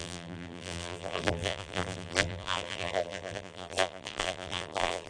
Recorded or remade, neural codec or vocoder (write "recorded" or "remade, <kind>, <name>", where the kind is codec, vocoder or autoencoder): remade, vocoder, BigVGAN v2